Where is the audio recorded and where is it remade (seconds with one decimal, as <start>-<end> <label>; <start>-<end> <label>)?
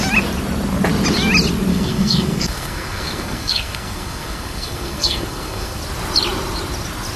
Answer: 0.0-1.7 recorded; 1.7-5.8 remade; 5.8-7.2 recorded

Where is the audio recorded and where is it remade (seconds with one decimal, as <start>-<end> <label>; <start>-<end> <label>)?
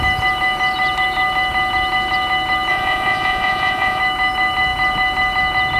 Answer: 0.0-2.7 recorded; 2.7-4.0 remade; 4.0-5.8 recorded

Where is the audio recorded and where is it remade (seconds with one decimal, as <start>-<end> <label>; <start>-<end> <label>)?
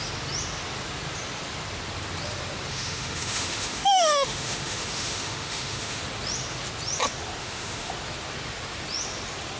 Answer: 0.0-2.7 recorded; 2.7-6.0 remade; 6.0-7.4 recorded; 7.4-7.9 remade; 7.9-9.6 recorded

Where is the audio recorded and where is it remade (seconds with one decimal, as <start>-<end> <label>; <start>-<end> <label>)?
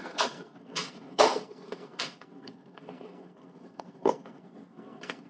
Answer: 0.0-5.3 remade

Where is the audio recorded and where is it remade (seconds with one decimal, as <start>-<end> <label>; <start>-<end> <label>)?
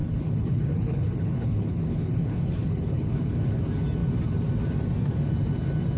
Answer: 0.0-3.6 remade; 3.6-6.0 recorded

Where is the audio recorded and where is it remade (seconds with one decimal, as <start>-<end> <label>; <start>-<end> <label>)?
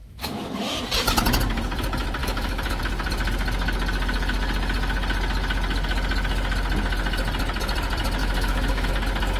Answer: 0.0-0.8 remade; 0.8-2.2 recorded; 2.2-2.8 remade; 2.8-8.2 recorded; 8.2-8.9 remade; 8.9-9.4 recorded